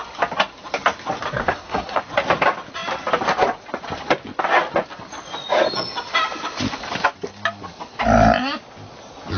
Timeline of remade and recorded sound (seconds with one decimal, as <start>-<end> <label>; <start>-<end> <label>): 0.0-1.4 recorded; 1.4-2.0 remade; 2.0-9.4 recorded